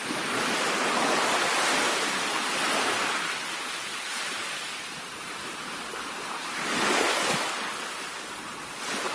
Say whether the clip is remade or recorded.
recorded